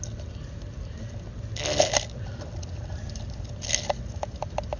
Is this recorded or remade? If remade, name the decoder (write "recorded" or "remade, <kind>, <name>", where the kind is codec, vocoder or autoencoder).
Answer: recorded